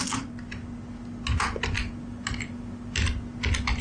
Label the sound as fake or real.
real